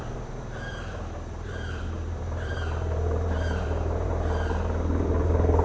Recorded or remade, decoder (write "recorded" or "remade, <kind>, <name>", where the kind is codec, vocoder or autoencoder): remade, vocoder, BigVGAN v2